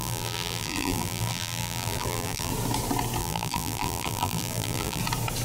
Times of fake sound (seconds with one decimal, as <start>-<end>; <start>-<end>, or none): 0.0-2.5; 3.2-5.0